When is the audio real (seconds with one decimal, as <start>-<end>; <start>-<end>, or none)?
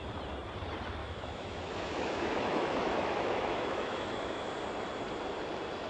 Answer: 0.0-1.0; 4.5-5.9